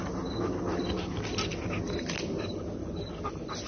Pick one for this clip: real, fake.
real